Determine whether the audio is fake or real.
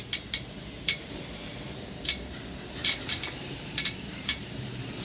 fake